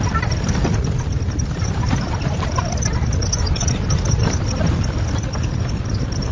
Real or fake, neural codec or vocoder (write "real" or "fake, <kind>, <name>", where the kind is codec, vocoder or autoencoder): real